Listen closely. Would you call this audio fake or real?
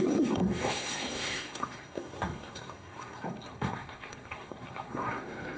fake